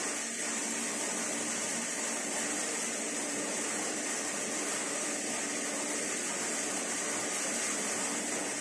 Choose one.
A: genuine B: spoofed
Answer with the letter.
A